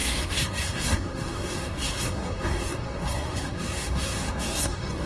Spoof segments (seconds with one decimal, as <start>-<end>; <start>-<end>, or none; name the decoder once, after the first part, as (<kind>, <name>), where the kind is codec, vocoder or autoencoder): 0.0-5.1 (codec, SNAC)